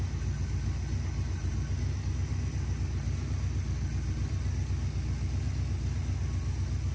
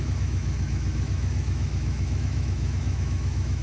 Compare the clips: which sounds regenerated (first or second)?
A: second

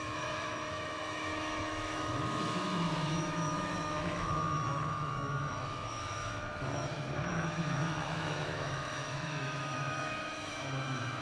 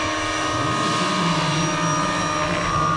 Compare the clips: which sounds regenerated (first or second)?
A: first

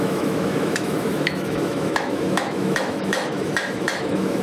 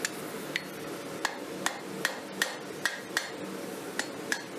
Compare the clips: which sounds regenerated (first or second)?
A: first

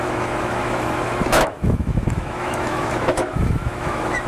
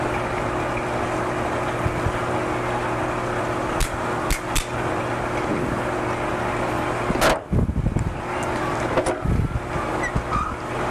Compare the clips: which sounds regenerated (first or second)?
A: first